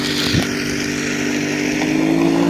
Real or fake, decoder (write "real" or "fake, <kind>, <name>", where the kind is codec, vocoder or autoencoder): real